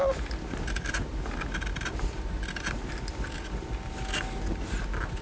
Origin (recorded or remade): recorded